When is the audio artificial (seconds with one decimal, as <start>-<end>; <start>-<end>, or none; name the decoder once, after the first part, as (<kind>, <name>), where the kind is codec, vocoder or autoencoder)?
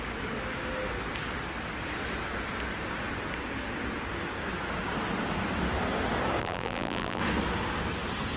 6.4-7.2 (vocoder, BigVGAN v2)